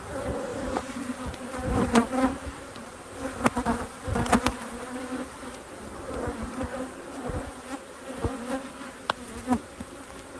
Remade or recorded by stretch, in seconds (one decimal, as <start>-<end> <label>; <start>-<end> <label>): 0.0-0.5 recorded; 0.5-5.5 remade; 5.5-6.7 recorded; 6.7-7.3 remade; 7.3-10.4 recorded